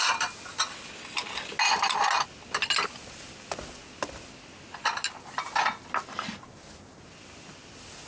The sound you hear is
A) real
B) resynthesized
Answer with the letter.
A